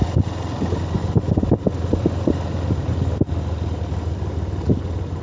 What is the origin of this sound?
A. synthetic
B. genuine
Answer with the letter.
B